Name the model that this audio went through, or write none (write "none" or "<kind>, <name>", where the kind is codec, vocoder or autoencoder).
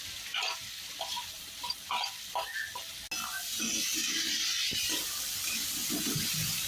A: none